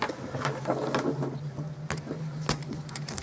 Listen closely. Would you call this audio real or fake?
real